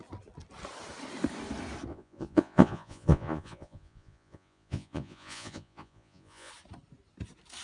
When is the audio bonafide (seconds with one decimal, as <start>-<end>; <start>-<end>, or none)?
0.0-1.9; 6.5-7.6